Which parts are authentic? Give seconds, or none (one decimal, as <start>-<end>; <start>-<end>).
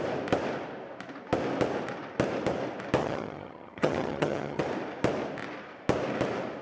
0.0-3.0; 4.6-6.6